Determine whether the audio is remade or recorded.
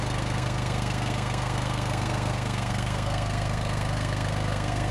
remade